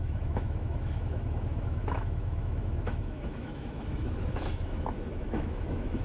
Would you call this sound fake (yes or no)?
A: yes